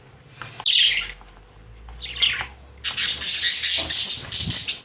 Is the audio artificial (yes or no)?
no